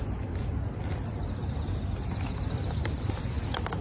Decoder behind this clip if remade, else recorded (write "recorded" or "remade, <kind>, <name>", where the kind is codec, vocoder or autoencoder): recorded